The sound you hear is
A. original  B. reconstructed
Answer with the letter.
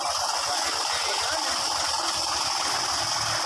A